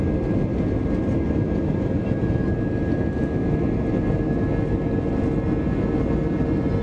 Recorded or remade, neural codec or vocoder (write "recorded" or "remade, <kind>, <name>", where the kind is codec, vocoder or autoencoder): recorded